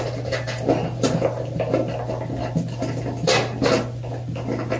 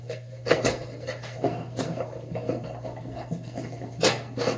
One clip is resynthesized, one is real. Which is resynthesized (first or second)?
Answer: second